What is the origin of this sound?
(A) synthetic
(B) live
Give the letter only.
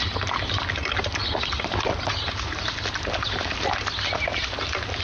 B